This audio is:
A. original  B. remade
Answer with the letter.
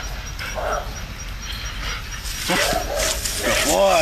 A